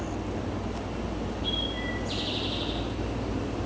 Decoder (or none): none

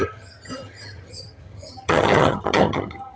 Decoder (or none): vocoder, HiFi-GAN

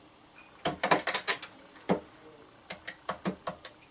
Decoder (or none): none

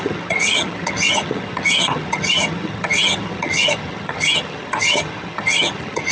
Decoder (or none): vocoder, HiFi-GAN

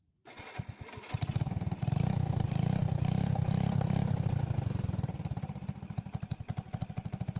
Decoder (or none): none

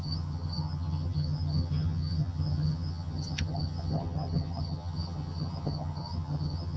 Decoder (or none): vocoder, HiFi-GAN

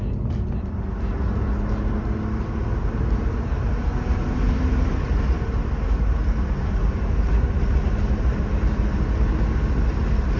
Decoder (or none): none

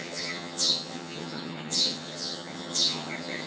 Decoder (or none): vocoder, HiFi-GAN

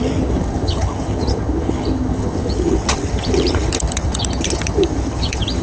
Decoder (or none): vocoder, HiFi-GAN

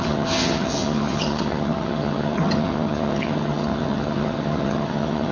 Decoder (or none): vocoder, HiFi-GAN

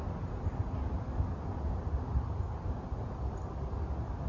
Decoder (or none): none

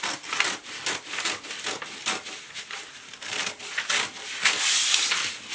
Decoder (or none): none